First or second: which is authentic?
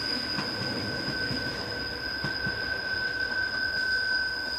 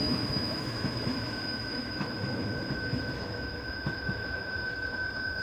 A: first